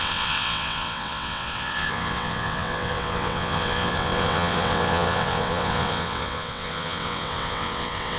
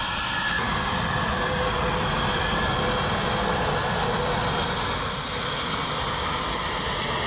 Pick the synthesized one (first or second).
first